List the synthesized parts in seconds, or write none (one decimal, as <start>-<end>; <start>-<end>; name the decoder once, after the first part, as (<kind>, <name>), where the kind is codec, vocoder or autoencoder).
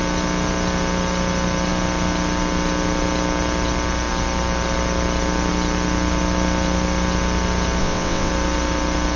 7.8-8.3 (vocoder, WaveNeXt)